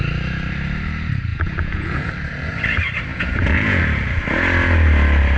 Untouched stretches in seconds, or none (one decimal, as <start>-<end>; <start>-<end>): 0.0-1.3; 2.1-3.1; 3.8-5.4